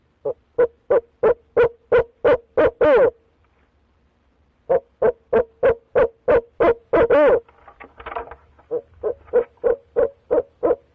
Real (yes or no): yes